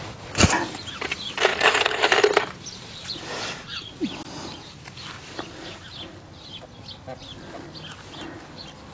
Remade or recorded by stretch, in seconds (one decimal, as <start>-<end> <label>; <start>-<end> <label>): 0.0-8.9 recorded